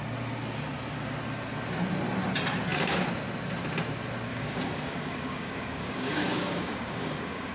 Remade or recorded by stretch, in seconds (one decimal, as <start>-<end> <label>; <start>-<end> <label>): 0.0-4.3 recorded; 4.3-7.5 remade